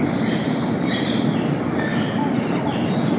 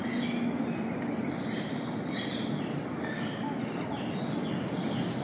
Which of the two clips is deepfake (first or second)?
first